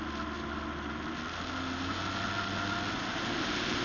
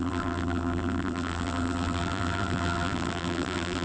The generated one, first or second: second